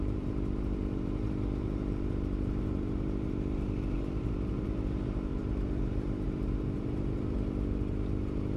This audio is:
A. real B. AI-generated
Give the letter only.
B